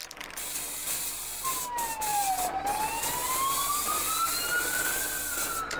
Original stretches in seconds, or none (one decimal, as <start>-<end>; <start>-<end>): 0.0-2.1; 2.8-5.8